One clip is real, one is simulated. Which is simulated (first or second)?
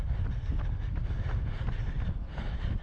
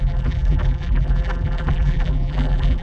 second